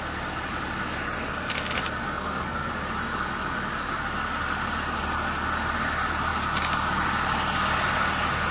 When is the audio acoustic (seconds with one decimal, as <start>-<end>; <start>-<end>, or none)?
0.0-2.0; 2.7-8.5